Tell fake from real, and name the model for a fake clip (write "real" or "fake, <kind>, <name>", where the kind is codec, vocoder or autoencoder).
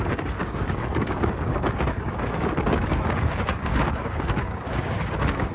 fake, codec, DAC